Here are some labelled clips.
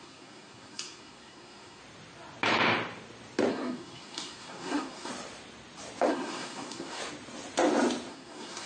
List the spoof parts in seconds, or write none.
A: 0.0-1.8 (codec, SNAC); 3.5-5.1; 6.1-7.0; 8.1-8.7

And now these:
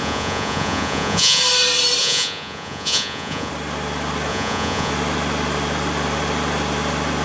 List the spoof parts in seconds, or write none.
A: 0.0-1.4 (vocoder, Vocos); 2.0-3.5; 4.3-4.9

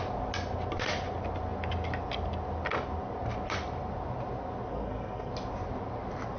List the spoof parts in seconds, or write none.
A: 4.7-5.3 (codec, SNAC)

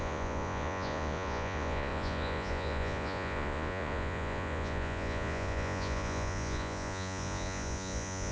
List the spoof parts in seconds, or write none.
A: 0.0-8.3 (vocoder, Vocos)

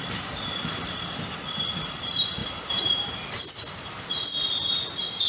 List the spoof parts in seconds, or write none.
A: 2.4-3.5 (vocoder, BigVGAN v2)